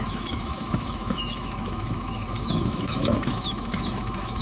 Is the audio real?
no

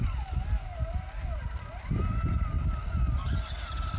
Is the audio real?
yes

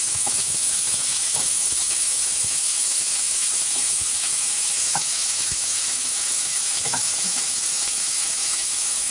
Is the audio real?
no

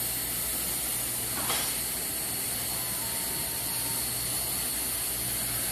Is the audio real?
yes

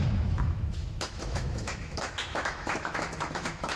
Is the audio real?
no